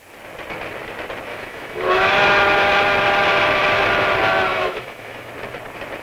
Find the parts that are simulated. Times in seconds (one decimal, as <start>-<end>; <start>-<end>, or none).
1.3-2.2; 4.5-5.3